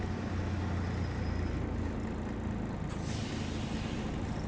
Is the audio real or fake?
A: real